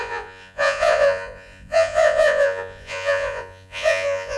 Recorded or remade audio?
remade